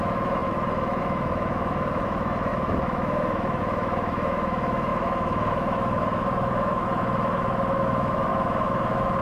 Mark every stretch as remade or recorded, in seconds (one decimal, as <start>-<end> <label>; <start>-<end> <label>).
0.0-9.2 remade